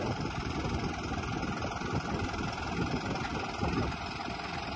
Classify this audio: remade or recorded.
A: recorded